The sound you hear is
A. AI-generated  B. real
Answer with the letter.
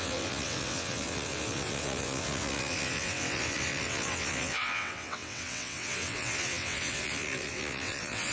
A